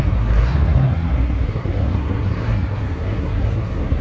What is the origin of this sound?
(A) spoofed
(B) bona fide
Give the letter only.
A